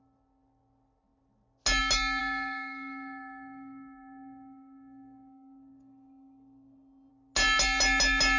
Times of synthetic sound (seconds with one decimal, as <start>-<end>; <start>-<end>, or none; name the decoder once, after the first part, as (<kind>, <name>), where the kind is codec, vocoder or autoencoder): 2.2-7.1 (codec, DAC)